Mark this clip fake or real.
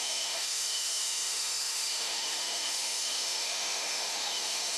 fake